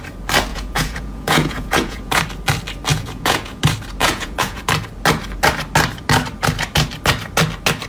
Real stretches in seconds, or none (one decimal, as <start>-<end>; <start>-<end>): 0.0-0.5; 2.2-2.9; 3.6-4.0; 4.6-7.9